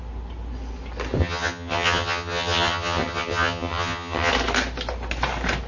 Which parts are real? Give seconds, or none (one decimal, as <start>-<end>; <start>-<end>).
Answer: 0.0-1.2; 4.3-5.7